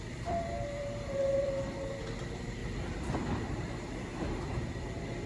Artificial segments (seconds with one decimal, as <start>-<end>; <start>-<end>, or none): 0.0-2.6; 3.2-4.1; 4.7-5.3